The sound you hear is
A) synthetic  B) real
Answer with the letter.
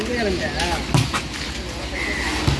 B